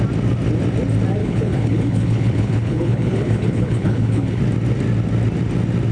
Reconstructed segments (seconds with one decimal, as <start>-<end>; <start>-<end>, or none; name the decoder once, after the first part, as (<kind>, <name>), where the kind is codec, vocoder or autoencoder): 1.2-4.4 (codec, HILCodec)